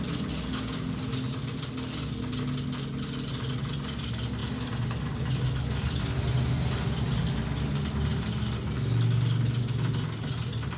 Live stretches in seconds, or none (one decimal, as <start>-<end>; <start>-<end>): 0.0-10.8